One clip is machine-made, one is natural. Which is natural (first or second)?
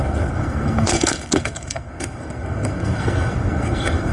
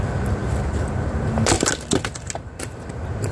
second